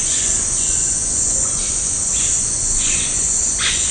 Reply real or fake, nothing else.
fake